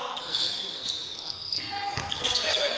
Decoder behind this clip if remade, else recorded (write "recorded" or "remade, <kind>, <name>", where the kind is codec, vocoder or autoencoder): remade, codec, SNAC